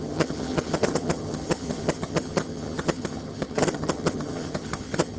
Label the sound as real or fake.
fake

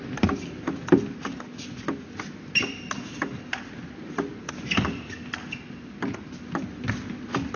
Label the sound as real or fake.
real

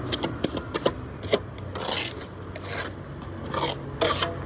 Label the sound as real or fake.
real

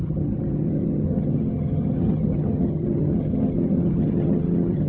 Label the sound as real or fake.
fake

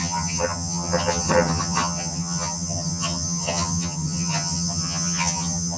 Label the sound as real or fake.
fake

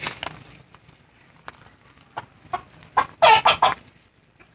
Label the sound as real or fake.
real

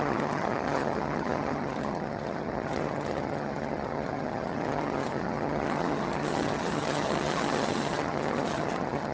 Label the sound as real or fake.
fake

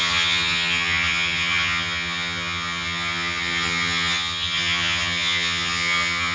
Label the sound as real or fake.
fake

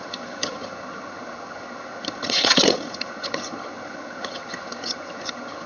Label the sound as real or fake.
fake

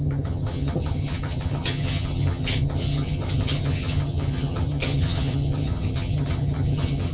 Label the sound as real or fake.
fake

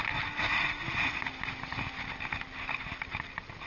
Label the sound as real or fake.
real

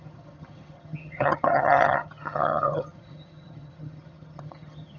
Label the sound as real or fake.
fake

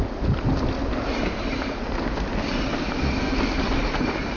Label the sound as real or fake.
real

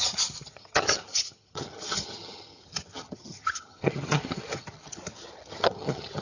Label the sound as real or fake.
fake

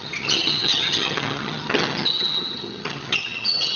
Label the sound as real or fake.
fake